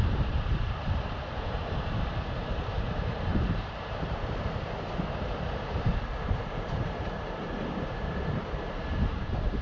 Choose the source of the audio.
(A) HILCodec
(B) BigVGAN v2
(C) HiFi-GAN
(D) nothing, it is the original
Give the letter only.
B